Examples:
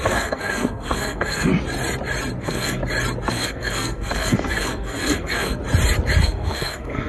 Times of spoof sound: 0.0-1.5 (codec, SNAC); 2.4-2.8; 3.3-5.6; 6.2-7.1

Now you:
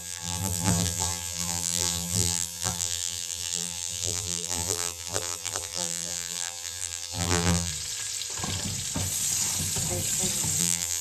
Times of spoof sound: 0.0-7.7 (vocoder, BigVGAN v2); 10.6-11.0